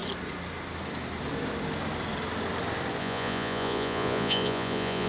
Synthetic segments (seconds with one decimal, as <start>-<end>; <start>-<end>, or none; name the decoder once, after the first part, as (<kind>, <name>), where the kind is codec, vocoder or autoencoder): 3.0-5.1 (vocoder, Vocos)